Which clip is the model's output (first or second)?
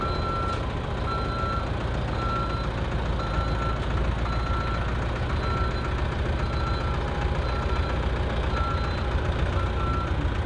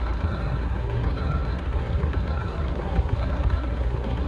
second